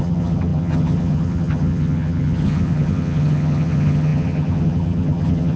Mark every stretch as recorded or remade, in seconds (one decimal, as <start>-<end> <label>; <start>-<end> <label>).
0.0-5.6 remade